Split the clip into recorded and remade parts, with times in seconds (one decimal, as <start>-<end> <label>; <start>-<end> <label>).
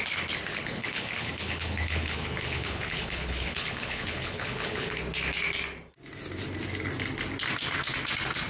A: 0.0-0.5 recorded; 0.5-5.0 remade; 5.0-8.5 recorded